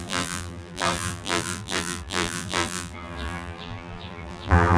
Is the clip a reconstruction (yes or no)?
yes